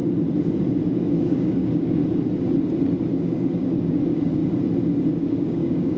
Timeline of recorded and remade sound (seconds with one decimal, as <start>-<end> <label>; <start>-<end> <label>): 0.0-0.9 recorded; 0.9-2.0 remade; 2.0-3.1 recorded; 3.1-4.4 remade; 4.4-5.1 recorded; 5.1-6.0 remade